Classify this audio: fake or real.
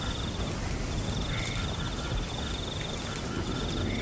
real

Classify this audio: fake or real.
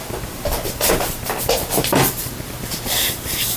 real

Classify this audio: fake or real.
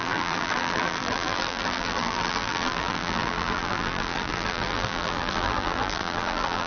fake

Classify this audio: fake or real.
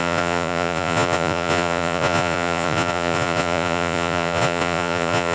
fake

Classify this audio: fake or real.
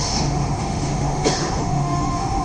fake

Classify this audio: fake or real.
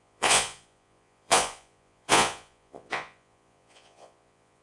fake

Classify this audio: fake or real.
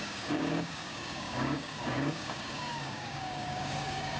fake